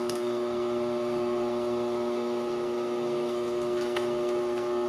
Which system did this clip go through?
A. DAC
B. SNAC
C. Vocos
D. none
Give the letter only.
B